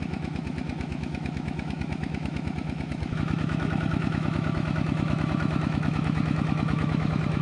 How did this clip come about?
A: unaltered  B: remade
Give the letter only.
B